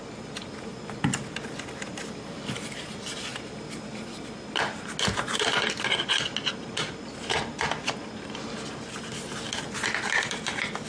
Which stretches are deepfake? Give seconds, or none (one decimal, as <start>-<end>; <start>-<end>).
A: 0.7-2.8